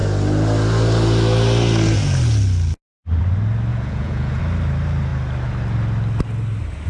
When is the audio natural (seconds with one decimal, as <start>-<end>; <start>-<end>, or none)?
0.0-3.7; 4.4-6.9